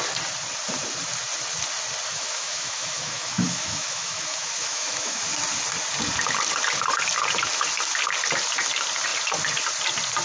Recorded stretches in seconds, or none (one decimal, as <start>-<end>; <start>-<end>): 0.0-2.1; 5.2-10.2